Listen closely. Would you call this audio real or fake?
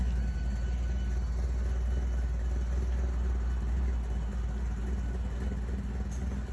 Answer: real